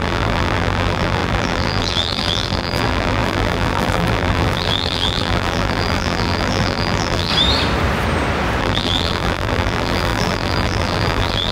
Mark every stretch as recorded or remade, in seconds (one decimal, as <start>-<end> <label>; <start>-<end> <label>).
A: 0.0-7.3 remade; 7.3-8.6 recorded; 8.6-11.5 remade